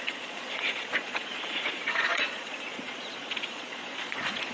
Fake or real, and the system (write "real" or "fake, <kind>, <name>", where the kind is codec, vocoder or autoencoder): fake, vocoder, Vocos